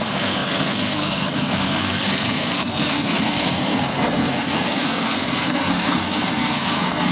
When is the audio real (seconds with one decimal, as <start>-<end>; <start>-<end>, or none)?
none